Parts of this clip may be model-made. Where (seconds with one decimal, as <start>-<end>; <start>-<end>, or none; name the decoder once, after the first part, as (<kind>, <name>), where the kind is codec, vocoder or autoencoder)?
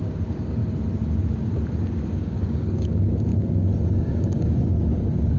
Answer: 0.0-0.6 (codec, DAC); 2.1-3.3; 4.0-5.4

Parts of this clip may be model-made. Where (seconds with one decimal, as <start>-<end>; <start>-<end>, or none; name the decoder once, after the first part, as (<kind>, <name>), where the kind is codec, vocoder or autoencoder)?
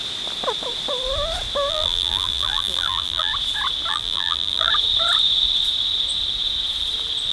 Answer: 1.7-3.3 (vocoder, BigVGAN v2); 3.9-4.7